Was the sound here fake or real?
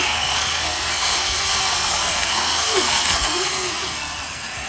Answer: fake